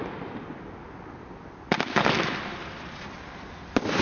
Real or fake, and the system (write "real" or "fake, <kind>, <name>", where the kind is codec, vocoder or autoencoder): real